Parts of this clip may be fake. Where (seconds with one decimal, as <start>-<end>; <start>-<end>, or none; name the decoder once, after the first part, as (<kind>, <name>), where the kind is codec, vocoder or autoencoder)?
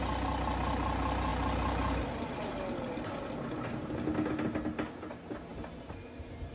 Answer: none